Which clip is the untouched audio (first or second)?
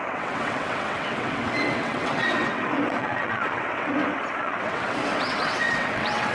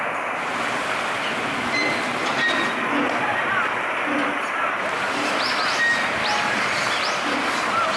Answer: second